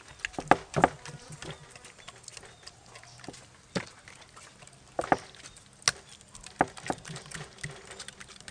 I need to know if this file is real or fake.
real